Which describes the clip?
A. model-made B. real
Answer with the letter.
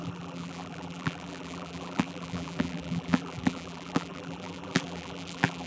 A